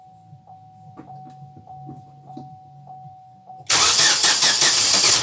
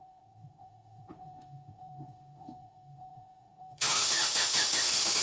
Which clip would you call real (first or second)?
first